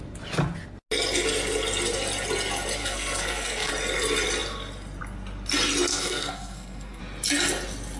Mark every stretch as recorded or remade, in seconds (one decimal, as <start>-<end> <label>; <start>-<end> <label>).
0.0-2.8 recorded; 2.8-3.7 remade; 3.7-5.9 recorded; 5.9-7.0 remade; 7.0-8.0 recorded